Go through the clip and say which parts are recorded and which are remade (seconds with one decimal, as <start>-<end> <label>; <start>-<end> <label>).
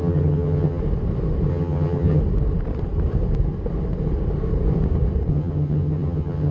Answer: 0.0-0.8 remade; 0.8-1.5 recorded; 1.5-2.2 remade; 2.2-5.3 recorded; 5.3-6.5 remade